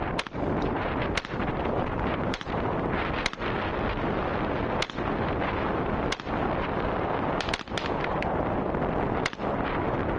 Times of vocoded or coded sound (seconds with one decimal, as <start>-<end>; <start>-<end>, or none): 1.4-2.7